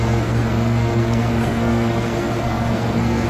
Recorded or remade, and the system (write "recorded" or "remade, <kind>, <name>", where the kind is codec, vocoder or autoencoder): remade, codec, SNAC